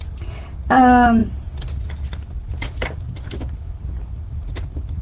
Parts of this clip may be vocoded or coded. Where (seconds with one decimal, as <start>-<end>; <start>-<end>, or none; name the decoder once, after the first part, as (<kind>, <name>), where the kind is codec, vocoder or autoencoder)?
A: 1.2-3.5 (vocoder, BigVGAN v2)